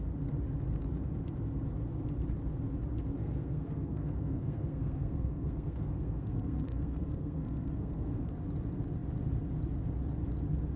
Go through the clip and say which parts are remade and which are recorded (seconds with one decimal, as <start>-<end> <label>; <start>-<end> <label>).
0.0-3.2 recorded; 3.2-8.3 remade; 8.3-10.8 recorded